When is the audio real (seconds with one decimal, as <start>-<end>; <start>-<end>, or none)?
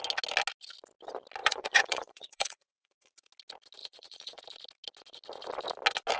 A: 0.0-1.4; 3.1-3.8; 4.4-6.2